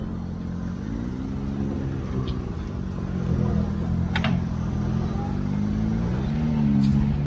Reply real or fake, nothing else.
real